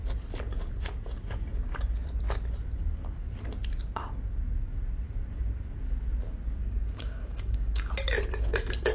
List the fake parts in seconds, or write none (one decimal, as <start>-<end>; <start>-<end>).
6.6-7.9